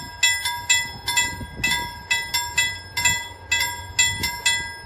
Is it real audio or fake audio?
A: real